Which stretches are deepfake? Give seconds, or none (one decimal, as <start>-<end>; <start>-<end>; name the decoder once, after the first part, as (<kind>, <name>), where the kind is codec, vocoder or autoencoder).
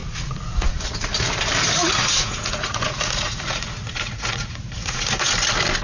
0.0-0.8 (vocoder, Vocos); 1.8-5.3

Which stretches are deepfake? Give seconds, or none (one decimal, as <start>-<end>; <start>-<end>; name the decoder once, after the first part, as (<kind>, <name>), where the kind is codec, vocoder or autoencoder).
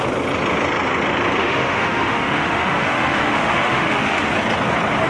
1.4-4.3 (autoencoder, DAC-VAE)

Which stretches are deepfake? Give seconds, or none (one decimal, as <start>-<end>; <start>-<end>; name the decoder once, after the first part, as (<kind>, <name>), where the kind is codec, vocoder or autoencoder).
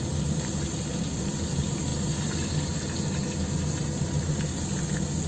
none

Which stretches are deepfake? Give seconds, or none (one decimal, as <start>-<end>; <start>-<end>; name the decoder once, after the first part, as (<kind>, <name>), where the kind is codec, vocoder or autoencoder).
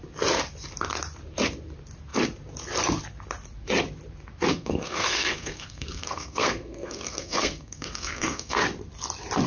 4.5-8.6 (codec, SNAC)